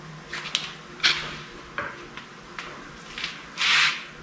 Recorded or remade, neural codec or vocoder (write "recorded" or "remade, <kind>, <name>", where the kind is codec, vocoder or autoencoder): recorded